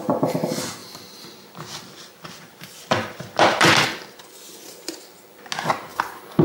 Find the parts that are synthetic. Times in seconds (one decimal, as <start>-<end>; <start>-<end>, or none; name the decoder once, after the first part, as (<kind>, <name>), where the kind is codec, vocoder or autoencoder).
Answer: 0.8-4.2 (vocoder, BigVGAN v2)